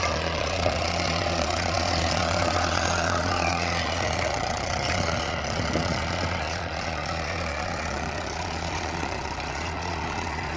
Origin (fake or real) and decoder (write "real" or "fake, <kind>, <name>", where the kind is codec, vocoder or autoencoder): fake, vocoder, Vocos